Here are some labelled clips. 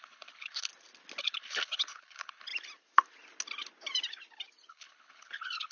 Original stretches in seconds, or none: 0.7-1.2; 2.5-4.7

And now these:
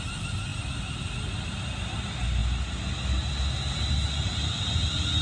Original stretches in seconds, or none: 0.0-5.2

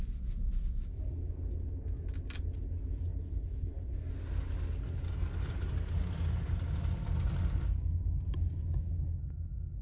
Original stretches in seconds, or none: 0.0-3.1; 3.9-9.8

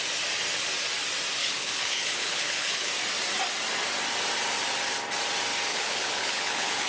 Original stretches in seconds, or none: 0.0-1.4; 2.9-5.7

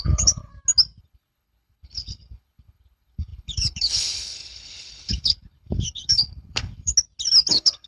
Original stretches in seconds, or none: 0.5-1.0; 6.9-7.5

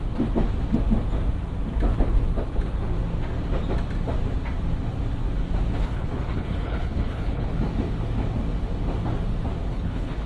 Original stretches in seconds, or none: 0.0-5.7; 7.5-9.7

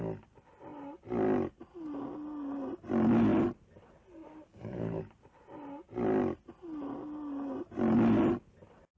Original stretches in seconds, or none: 0.0-4.5; 5.0-9.0

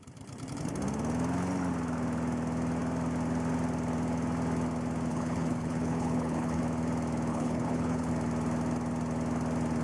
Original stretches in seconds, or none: 0.0-5.1; 6.6-7.3; 8.1-9.8